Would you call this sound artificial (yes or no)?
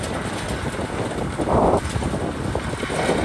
no